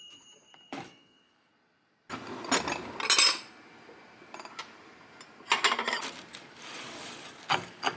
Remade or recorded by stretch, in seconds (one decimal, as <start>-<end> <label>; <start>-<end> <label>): 0.0-1.5 remade; 1.5-6.3 recorded; 6.3-8.0 remade